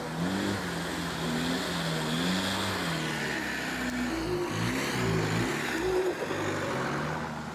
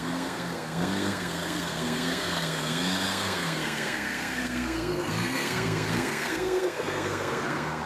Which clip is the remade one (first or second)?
second